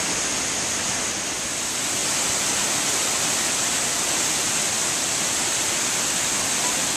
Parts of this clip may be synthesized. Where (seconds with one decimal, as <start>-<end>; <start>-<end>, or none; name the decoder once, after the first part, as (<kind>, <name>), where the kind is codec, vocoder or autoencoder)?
none